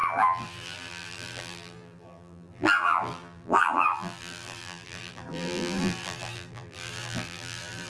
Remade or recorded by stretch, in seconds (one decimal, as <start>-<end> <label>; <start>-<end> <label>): 0.0-7.9 remade